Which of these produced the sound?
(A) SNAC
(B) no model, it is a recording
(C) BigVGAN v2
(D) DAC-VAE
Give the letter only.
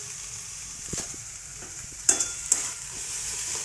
C